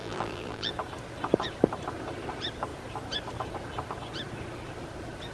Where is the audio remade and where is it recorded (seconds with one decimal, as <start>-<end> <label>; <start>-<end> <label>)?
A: 0.0-0.7 remade; 0.7-5.3 recorded